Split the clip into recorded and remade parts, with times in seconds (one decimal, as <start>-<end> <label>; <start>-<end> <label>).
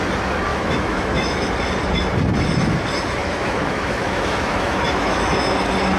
0.0-0.5 recorded; 0.5-1.5 remade; 1.5-3.2 recorded; 3.2-5.5 remade; 5.5-6.0 recorded